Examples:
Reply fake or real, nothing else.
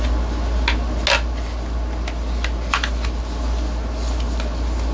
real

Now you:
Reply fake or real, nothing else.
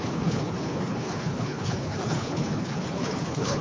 fake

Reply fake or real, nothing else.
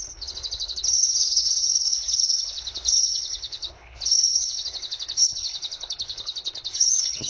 fake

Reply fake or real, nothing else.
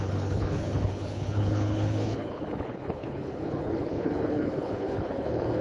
fake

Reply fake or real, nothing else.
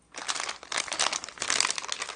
real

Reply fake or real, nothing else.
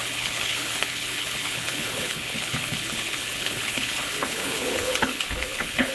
fake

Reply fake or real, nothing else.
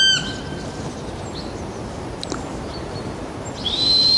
real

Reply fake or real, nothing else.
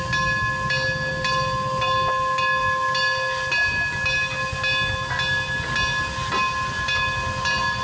real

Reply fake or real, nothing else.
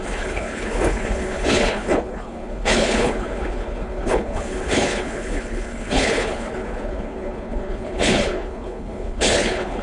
fake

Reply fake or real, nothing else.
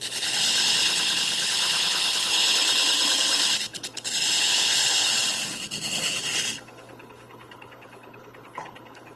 fake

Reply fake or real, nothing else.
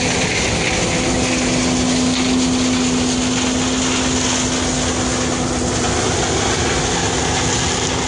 real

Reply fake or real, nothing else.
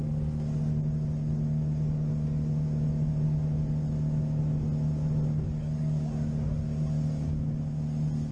real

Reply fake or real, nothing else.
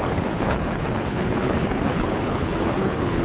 fake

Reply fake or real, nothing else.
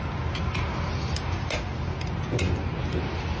real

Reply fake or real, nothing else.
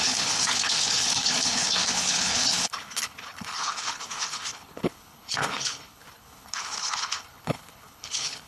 fake